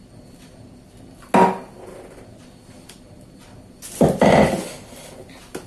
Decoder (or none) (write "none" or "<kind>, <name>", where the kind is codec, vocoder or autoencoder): none